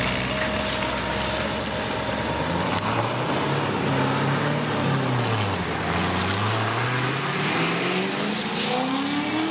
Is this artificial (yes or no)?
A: no